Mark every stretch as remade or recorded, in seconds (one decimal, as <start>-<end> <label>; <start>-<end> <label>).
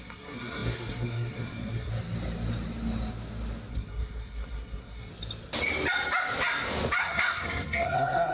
0.0-1.9 remade; 1.9-3.7 recorded; 3.7-5.1 remade; 5.1-7.0 recorded; 7.0-8.3 remade